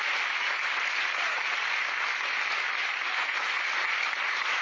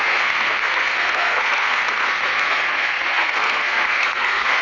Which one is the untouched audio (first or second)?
first